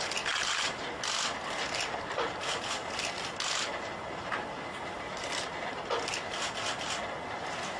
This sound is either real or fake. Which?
real